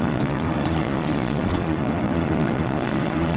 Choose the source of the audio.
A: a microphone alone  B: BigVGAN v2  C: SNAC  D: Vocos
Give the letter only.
D